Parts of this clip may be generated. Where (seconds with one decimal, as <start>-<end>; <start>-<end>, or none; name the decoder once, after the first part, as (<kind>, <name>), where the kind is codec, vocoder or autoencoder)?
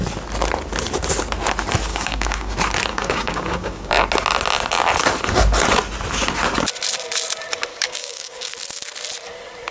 1.9-2.5 (codec, DAC); 2.9-3.9; 7.7-8.5